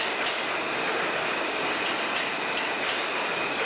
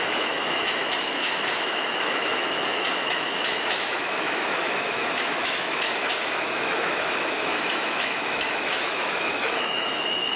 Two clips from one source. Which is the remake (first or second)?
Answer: second